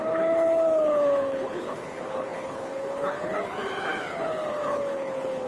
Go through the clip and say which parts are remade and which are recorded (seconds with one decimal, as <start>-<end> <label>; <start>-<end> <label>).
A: 0.0-5.5 remade